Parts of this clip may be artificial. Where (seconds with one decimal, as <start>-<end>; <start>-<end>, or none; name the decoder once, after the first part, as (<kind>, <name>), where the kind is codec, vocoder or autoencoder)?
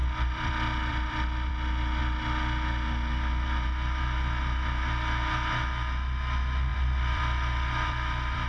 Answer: 0.0-0.5 (vocoder, BigVGAN v2); 0.9-1.5; 6.7-8.5